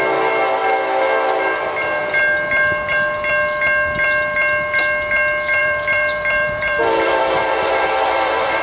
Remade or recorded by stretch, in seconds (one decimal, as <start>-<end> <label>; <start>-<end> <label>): 0.0-5.6 recorded; 5.6-8.6 remade